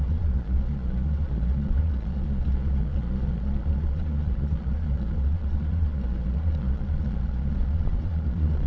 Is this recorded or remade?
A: remade